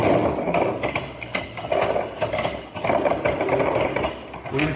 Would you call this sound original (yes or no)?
yes